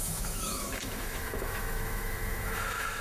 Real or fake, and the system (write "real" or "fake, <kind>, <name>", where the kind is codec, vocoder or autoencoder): fake, autoencoder, DAC-VAE